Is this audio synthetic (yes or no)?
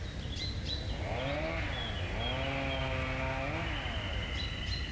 no